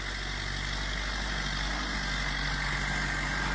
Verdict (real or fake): real